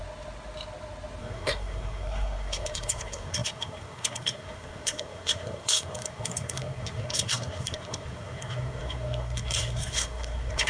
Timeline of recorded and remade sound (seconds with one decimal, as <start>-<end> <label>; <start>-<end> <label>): 0.0-1.2 recorded; 1.2-10.7 remade